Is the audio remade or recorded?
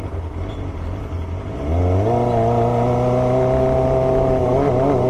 recorded